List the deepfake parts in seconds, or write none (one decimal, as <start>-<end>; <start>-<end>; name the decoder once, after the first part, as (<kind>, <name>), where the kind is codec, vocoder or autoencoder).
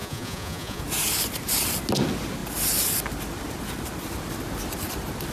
0.0-0.8 (vocoder, Vocos)